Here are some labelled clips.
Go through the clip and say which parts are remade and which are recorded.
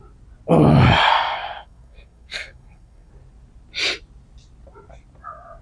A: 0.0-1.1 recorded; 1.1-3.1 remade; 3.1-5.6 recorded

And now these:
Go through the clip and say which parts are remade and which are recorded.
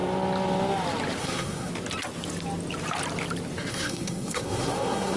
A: 0.0-1.2 recorded; 1.2-1.7 remade; 1.7-3.7 recorded; 3.7-5.2 remade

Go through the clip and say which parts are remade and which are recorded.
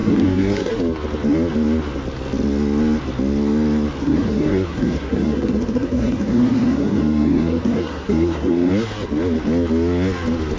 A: 0.0-0.7 remade; 0.7-4.0 recorded; 4.0-8.7 remade; 8.7-10.6 recorded